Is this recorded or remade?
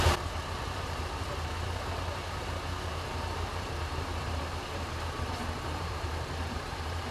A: remade